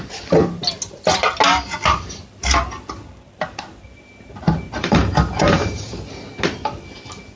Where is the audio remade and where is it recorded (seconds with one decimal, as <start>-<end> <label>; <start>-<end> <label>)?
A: 0.0-4.8 recorded; 4.8-6.1 remade; 6.1-7.3 recorded